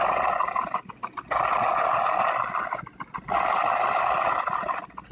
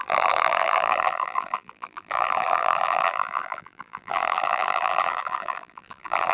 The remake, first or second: second